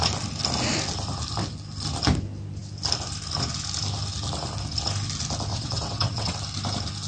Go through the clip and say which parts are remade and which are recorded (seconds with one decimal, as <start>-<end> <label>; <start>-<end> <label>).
0.0-5.5 recorded; 5.5-6.3 remade; 6.3-7.1 recorded